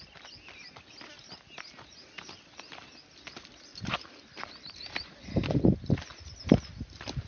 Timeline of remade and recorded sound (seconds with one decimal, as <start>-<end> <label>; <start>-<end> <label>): 0.0-3.7 recorded; 3.7-5.2 remade; 5.2-7.3 recorded